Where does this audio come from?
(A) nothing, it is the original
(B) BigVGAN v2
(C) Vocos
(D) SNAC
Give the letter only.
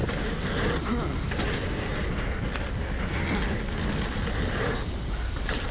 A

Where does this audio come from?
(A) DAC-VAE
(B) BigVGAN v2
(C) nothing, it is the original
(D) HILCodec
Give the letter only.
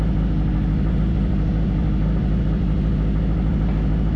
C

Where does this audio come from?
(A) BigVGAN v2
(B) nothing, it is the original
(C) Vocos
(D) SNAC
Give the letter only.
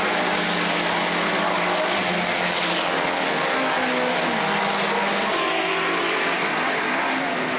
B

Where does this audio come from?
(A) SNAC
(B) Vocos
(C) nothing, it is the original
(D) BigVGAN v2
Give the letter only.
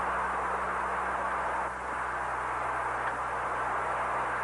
C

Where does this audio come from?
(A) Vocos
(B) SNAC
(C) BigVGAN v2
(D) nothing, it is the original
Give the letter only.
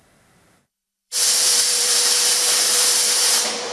C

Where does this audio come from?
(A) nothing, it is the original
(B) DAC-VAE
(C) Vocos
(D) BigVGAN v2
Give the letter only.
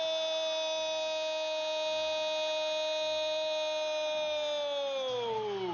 A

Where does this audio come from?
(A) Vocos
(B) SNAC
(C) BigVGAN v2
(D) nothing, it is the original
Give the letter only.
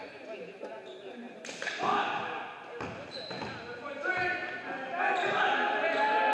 D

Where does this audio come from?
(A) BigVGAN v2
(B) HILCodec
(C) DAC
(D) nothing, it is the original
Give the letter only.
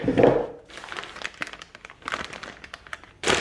A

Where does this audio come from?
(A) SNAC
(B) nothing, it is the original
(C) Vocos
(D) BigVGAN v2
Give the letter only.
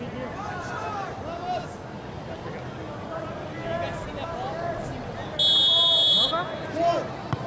B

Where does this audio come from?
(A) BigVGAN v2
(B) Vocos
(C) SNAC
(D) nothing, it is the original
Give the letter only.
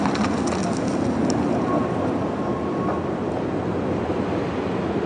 D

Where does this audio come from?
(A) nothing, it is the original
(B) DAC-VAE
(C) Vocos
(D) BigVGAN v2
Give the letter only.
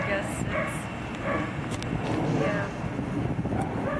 A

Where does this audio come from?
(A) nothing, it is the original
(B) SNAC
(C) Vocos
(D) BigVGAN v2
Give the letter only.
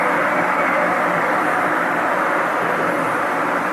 D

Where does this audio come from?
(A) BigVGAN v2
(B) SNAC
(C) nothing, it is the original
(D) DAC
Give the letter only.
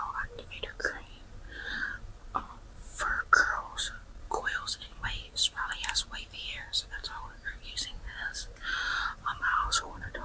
A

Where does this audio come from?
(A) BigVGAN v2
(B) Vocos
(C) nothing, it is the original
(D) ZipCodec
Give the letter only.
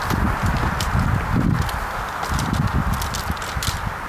C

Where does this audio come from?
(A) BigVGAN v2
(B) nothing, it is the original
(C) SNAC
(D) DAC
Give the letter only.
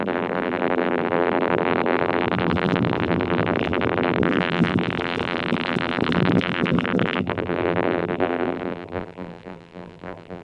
A